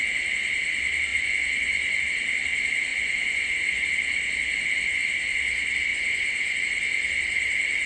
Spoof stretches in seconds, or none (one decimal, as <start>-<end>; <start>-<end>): 1.1-2.0; 2.9-3.9; 5.9-6.6